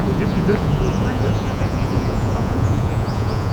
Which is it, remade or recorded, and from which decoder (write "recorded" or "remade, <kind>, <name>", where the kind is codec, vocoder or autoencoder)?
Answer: remade, vocoder, Vocos